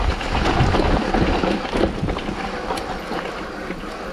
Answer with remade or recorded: recorded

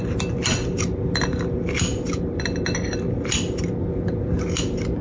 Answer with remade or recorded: recorded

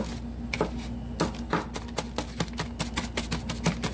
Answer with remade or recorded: recorded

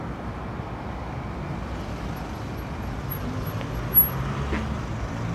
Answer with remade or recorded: recorded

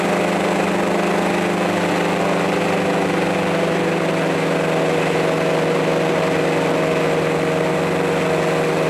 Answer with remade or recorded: recorded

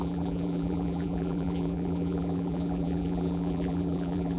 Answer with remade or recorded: remade